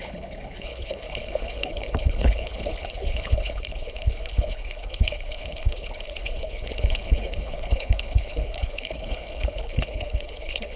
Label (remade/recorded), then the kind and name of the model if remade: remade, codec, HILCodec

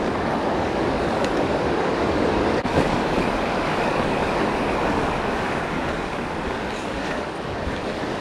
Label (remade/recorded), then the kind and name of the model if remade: remade, codec, DAC